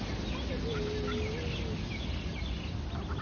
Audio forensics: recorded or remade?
recorded